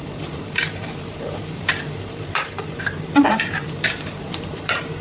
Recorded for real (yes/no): no